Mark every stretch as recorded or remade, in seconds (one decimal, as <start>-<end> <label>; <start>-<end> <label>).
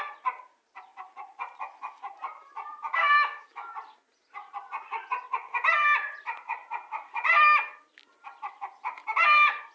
0.0-3.0 recorded; 3.0-3.7 remade; 3.7-9.7 recorded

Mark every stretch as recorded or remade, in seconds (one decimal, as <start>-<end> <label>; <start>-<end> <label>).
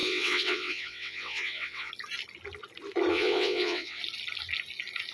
0.0-1.9 remade; 1.9-3.1 recorded; 3.1-4.0 remade; 4.0-5.1 recorded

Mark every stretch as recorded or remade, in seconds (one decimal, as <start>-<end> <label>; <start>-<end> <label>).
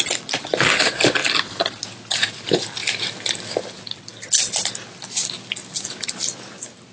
0.0-6.9 recorded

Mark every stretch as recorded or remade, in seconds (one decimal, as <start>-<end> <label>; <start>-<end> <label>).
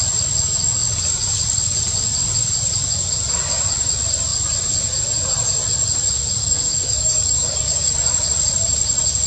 0.0-6.4 recorded; 6.4-7.9 remade; 7.9-9.3 recorded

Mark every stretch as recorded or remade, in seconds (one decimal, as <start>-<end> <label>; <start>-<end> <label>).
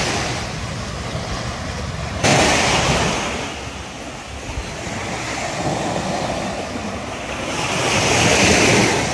0.0-9.1 recorded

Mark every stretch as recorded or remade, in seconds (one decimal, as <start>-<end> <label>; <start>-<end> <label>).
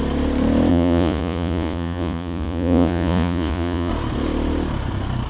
0.0-0.7 recorded; 0.7-3.9 remade; 3.9-5.3 recorded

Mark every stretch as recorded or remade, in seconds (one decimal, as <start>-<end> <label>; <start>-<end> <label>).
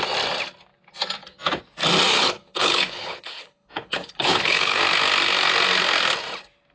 0.0-2.1 recorded; 2.1-4.8 remade; 4.8-6.7 recorded